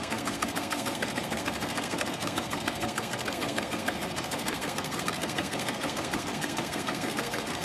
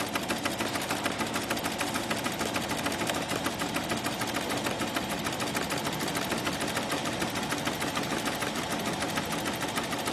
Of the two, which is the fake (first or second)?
first